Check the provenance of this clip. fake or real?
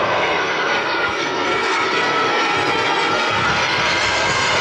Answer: fake